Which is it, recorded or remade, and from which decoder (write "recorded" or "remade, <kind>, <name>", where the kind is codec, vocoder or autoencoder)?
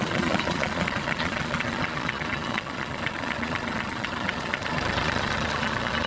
remade, vocoder, Vocos